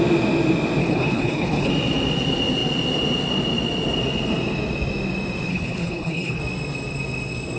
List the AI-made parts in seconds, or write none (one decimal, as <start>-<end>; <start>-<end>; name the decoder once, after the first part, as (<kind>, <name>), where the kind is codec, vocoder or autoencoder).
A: 0.8-1.7 (codec, HILCodec); 5.5-6.4